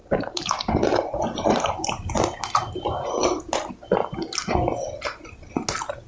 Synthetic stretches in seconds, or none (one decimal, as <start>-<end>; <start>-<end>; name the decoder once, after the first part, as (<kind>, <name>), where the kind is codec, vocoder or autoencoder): 0.0-3.7 (vocoder, BigVGAN v2)